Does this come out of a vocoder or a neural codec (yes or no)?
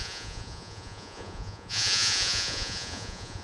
yes